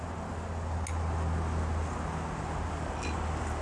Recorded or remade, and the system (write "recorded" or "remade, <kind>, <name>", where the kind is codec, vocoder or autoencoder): recorded